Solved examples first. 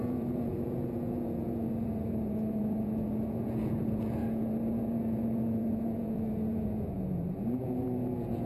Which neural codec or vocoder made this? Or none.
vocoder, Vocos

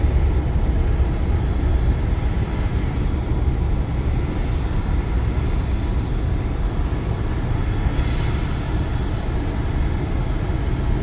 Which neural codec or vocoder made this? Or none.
none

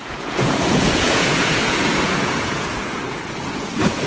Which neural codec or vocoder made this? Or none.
vocoder, Vocos